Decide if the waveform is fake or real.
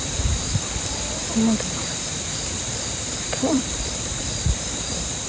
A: fake